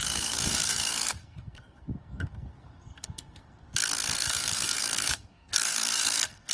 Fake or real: fake